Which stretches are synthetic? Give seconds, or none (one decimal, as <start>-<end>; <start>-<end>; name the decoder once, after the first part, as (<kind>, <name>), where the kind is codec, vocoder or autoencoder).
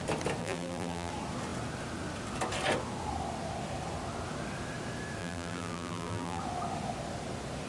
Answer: 0.4-1.1 (vocoder, BigVGAN v2); 5.2-6.4